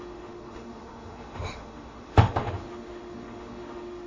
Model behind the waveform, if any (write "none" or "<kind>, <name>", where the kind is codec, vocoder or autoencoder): autoencoder, DAC-VAE